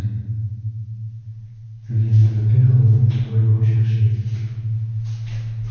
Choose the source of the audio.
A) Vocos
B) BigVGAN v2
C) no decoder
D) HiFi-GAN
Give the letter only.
C